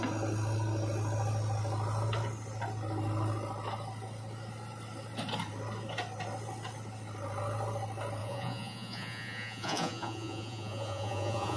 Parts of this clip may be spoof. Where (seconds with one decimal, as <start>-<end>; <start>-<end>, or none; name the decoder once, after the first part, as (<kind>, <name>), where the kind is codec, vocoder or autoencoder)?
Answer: 8.2-11.6 (vocoder, Vocos)